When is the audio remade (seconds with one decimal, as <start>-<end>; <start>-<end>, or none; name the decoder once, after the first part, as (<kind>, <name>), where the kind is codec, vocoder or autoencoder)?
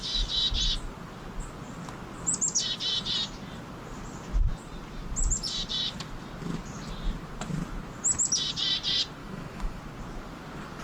9.2-9.8 (autoencoder, DAC-VAE)